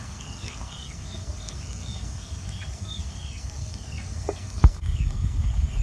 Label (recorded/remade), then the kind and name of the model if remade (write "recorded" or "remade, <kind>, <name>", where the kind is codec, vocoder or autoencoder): remade, codec, SNAC